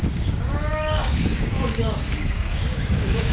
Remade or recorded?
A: remade